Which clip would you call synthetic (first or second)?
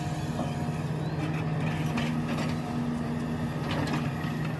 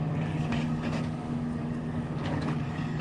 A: second